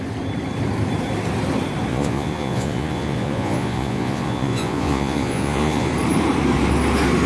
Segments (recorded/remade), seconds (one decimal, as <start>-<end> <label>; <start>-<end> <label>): 0.0-1.9 recorded; 1.9-5.9 remade; 5.9-7.3 recorded